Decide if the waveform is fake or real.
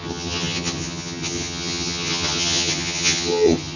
fake